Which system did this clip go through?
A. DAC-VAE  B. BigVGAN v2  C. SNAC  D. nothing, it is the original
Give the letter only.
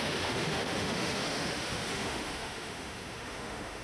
A